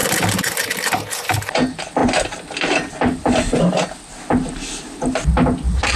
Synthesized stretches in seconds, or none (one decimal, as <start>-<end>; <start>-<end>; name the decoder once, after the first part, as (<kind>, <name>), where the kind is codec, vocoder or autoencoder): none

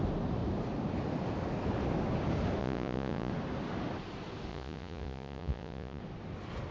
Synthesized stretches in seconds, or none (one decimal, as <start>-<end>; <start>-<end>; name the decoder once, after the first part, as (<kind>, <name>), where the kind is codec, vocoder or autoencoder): 2.6-3.3 (vocoder, Vocos); 4.5-6.0

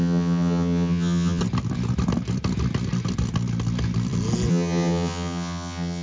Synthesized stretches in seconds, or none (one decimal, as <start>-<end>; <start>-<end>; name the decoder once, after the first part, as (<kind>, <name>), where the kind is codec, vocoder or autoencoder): 0.0-1.4 (vocoder, HiFi-GAN); 4.5-6.0

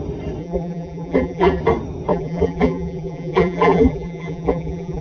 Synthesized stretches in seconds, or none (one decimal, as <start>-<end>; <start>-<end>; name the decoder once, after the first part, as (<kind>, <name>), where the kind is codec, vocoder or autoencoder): 0.4-1.6 (vocoder, BigVGAN v2); 2.1-5.0